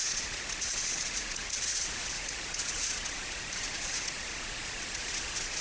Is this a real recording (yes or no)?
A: no